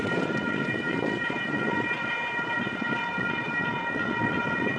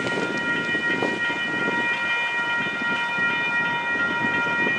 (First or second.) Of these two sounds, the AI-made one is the first